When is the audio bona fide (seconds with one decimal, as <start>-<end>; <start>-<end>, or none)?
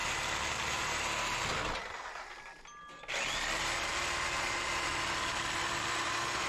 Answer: 0.0-6.5